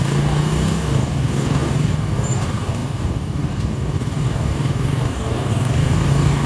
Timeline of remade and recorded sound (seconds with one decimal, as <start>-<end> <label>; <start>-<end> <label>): 0.0-6.5 remade